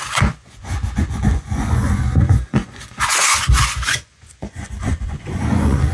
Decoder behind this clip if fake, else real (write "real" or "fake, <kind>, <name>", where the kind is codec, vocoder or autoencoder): fake, vocoder, Vocos